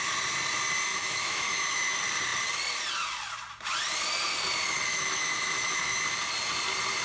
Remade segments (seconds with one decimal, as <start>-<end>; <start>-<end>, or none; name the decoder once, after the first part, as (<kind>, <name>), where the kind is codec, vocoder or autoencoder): 0.9-1.9 (autoencoder, DAC-VAE); 4.9-6.0

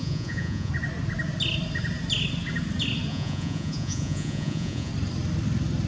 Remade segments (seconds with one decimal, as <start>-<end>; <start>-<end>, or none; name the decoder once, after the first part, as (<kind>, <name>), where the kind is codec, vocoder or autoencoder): 0.0-0.7 (vocoder, Vocos); 3.1-4.9

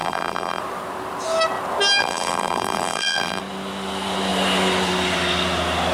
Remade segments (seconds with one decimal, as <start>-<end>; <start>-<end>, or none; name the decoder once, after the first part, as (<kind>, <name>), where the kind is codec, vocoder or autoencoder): 0.0-0.6 (vocoder, BigVGAN v2); 2.0-3.4

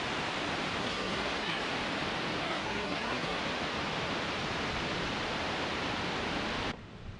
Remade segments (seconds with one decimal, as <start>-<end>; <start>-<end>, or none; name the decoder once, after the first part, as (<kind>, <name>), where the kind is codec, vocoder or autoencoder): 0.8-1.6 (codec, SNAC); 2.4-3.4